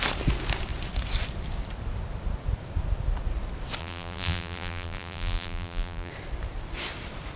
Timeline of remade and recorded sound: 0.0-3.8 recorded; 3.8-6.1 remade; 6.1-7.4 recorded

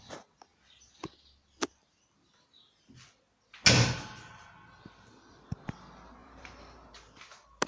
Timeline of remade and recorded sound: 0.0-6.2 recorded; 6.2-6.9 remade; 6.9-7.7 recorded

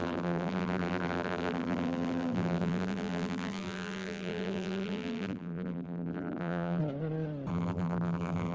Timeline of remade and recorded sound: 0.0-6.8 remade; 6.8-7.5 recorded; 7.5-8.5 remade

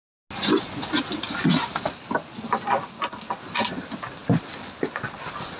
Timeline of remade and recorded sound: 0.0-5.6 recorded

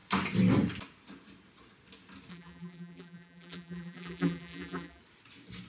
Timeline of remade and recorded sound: 0.0-2.3 recorded; 2.3-5.0 remade; 5.0-5.7 recorded